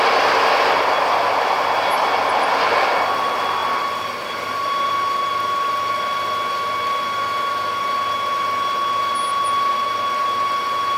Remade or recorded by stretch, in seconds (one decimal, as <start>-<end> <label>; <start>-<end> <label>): 0.0-3.6 recorded; 3.6-4.9 remade; 4.9-11.0 recorded